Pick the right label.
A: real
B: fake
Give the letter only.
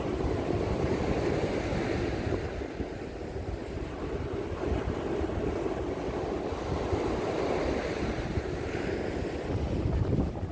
A